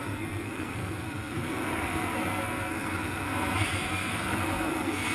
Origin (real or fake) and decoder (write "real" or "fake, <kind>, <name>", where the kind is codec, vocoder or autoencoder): fake, codec, SNAC